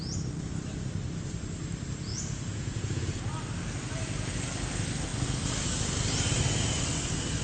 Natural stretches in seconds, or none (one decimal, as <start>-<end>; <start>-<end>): 0.0-2.1; 3.2-7.4